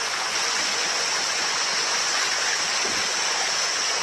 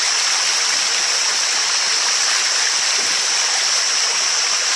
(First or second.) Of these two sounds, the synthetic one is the first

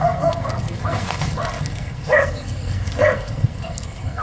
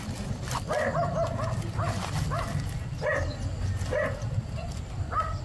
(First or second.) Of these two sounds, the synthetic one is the first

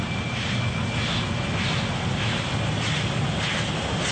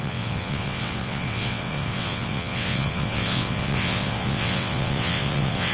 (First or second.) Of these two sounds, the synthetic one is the second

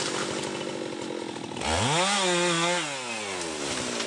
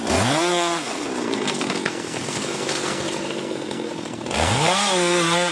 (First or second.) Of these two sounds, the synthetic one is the second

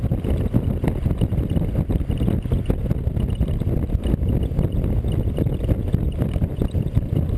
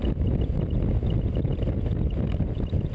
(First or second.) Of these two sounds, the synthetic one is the first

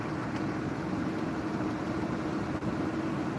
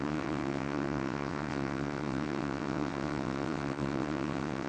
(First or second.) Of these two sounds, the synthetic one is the second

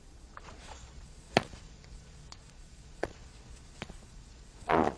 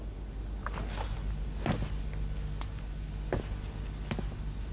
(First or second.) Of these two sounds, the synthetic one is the first